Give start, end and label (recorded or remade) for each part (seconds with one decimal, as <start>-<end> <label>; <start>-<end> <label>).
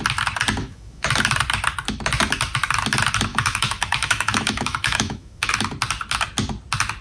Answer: 0.0-0.6 recorded; 0.6-1.1 remade; 1.1-3.3 recorded; 3.3-5.5 remade; 5.5-7.0 recorded